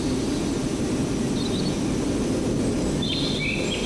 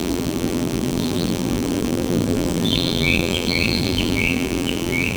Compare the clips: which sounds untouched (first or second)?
first